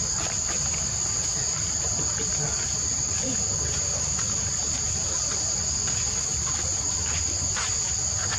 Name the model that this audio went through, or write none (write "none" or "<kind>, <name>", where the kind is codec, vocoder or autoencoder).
none